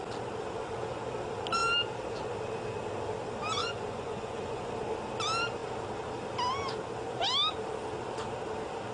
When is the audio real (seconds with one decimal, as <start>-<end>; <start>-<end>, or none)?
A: 0.0-3.6; 4.7-8.9